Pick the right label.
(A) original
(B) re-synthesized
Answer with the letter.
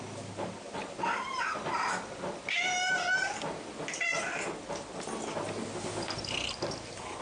A